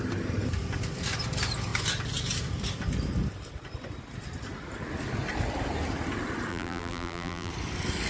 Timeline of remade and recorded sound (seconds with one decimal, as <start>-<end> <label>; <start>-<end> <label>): 0.0-6.5 recorded; 6.5-7.5 remade; 7.5-8.1 recorded